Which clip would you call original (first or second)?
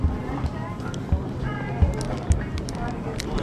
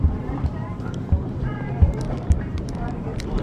first